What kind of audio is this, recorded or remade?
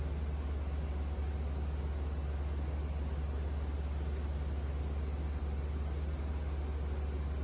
recorded